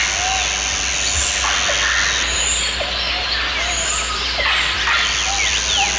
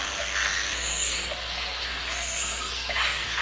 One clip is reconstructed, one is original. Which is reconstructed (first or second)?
second